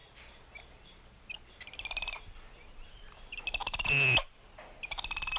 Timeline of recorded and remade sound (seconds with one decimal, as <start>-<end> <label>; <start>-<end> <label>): 0.0-5.4 recorded